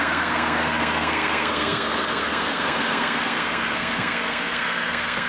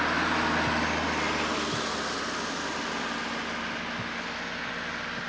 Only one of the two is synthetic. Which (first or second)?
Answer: first